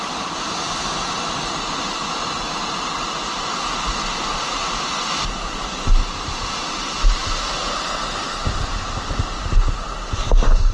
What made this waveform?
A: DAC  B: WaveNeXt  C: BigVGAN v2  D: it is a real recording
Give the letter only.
D